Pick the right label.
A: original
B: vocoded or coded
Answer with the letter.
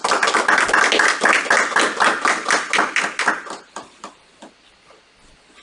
A